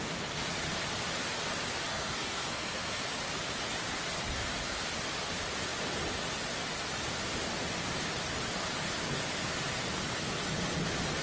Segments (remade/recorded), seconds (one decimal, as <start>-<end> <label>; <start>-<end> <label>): 0.0-1.9 recorded; 1.9-3.0 remade; 3.0-11.2 recorded